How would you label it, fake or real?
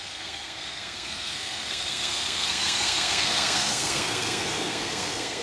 fake